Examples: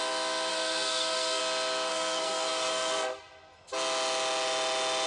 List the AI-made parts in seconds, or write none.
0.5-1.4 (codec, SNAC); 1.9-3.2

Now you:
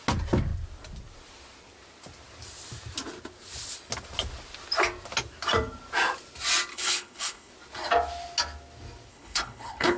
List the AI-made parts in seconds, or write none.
6.7-7.5 (codec, HILCodec); 9.1-10.0

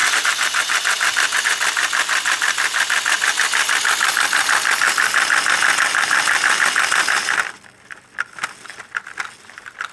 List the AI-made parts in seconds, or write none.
none

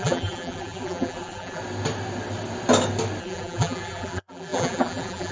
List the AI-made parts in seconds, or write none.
0.0-1.6 (vocoder, BigVGAN v2); 3.2-5.3

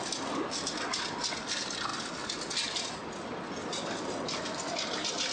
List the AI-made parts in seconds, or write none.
none

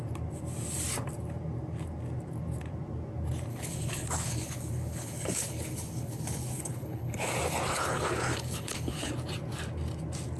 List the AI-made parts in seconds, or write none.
3.5-7.3 (codec, HILCodec); 7.7-9.1